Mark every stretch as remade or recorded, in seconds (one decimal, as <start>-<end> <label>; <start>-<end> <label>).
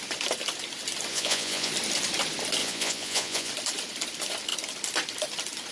0.0-1.1 recorded; 1.1-1.7 remade; 1.7-2.6 recorded; 2.6-3.5 remade; 3.5-5.7 recorded